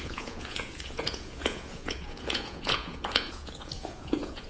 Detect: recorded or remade remade